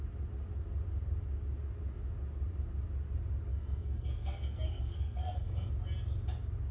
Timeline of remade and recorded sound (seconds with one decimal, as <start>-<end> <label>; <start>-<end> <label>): 0.0-3.5 recorded; 3.5-5.7 remade; 5.7-6.7 recorded